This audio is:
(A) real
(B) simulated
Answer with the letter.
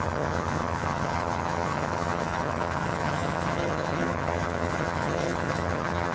B